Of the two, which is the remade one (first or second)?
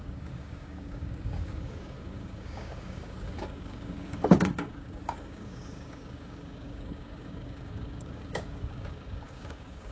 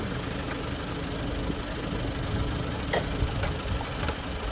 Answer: first